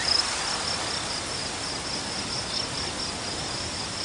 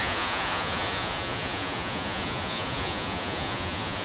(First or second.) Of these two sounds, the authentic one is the first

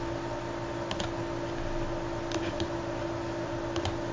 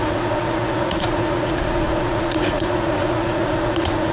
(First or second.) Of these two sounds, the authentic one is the first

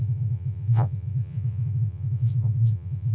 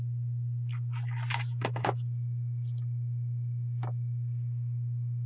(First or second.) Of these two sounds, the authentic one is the second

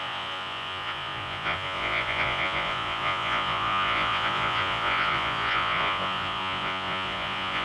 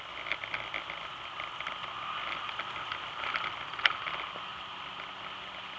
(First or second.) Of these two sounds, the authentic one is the second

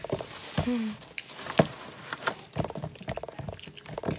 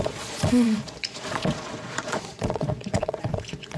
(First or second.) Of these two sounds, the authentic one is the first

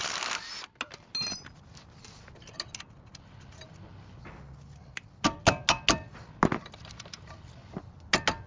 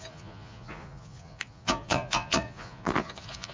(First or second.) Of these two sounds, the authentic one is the first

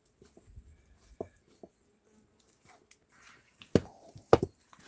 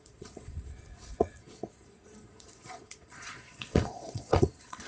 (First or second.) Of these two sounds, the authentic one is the first